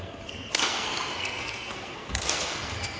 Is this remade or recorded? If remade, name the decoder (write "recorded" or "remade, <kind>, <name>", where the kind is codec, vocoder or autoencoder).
remade, codec, SNAC